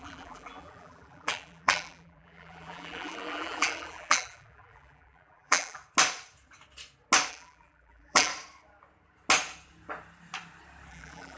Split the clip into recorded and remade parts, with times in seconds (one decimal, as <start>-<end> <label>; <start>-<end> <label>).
0.0-5.8 remade; 5.8-7.3 recorded; 7.3-8.3 remade; 8.3-10.9 recorded; 10.9-11.4 remade